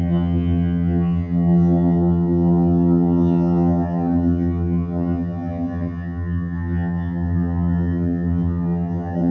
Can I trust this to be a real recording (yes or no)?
no